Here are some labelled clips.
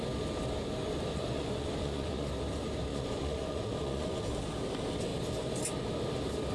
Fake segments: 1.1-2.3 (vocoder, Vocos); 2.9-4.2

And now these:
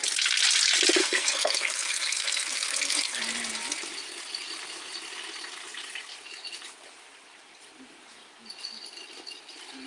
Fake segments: 1.0-3.2 (codec, SNAC)

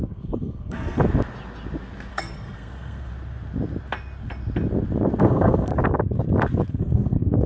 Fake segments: 0.0-1.0 (codec, SNAC); 2.1-3.1; 5.2-5.7; 6.7-7.5

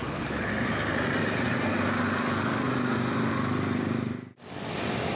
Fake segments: 0.0-0.5 (codec, HILCodec)

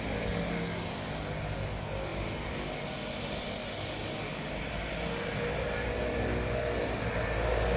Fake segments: none

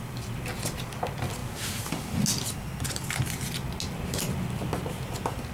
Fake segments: none

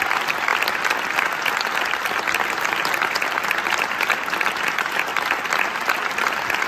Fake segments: none